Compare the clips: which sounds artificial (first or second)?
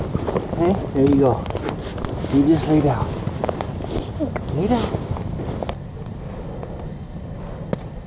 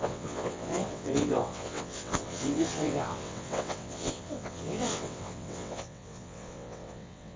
second